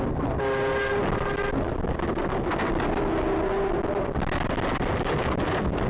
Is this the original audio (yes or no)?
yes